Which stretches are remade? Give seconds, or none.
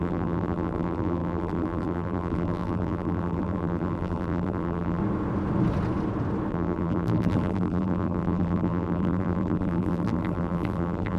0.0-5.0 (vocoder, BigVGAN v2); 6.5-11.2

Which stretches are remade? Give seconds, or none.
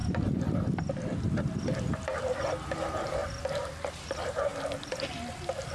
2.2-3.2 (vocoder, BigVGAN v2); 3.9-4.5; 5.3-5.7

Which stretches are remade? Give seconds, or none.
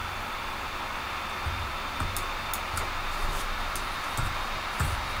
none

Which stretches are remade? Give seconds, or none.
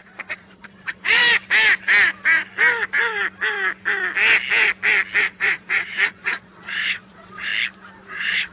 0.0-1.2 (vocoder, Vocos); 5.2-7.5; 8.1-8.5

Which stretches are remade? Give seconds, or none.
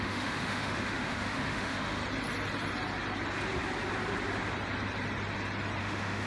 0.0-2.0 (autoencoder, DAC-VAE); 5.8-6.3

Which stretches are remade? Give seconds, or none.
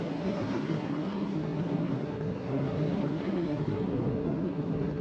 0.0-5.0 (codec, SNAC)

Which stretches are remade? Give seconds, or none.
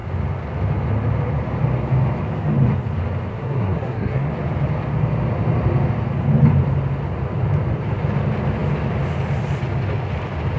3.3-4.3 (codec, SNAC)